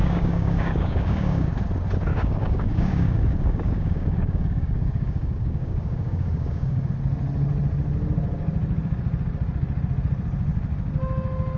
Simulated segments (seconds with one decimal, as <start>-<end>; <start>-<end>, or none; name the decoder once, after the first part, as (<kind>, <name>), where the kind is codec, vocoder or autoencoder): 0.0-1.5 (codec, DAC); 2.1-6.9